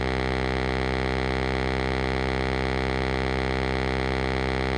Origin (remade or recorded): recorded